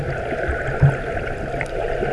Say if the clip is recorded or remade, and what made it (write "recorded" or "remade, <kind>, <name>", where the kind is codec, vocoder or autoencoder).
recorded